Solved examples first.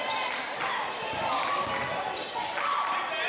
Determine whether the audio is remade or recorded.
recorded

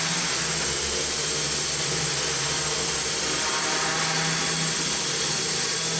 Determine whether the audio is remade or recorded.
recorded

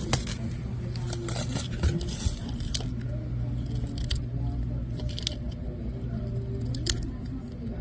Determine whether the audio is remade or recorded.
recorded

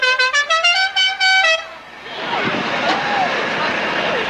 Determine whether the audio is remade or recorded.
recorded